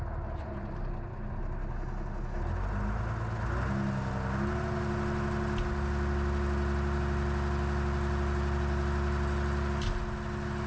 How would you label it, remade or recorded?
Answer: recorded